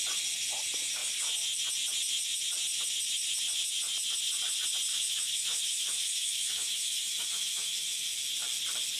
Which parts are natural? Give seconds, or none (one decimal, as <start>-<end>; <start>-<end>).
0.0-4.9; 8.2-9.0